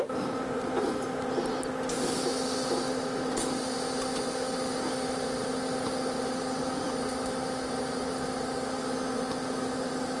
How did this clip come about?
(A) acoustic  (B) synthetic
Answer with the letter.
A